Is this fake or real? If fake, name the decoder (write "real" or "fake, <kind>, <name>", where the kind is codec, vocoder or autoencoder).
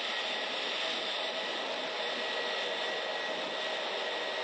real